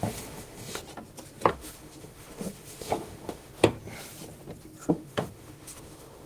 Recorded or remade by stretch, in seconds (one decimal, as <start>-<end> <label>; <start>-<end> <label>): 0.0-0.8 remade; 0.8-1.5 recorded; 1.5-3.5 remade; 3.5-4.9 recorded; 4.9-6.3 remade